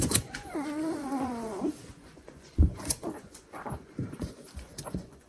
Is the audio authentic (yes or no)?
no